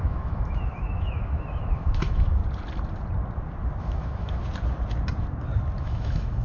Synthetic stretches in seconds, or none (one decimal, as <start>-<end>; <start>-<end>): 0.0-2.4; 3.8-4.4; 5.8-6.4